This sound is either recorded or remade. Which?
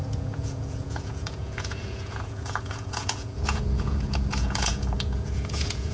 remade